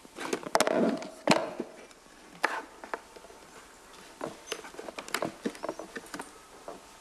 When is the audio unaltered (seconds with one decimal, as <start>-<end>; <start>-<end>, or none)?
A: 0.0-1.4; 2.3-7.0